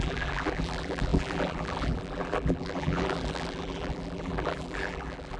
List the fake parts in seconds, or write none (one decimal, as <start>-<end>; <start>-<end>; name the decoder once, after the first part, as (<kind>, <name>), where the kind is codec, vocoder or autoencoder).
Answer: 0.0-5.4 (vocoder, BigVGAN v2)